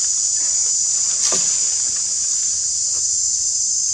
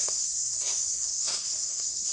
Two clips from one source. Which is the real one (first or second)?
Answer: first